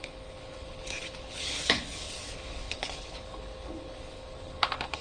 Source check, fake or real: fake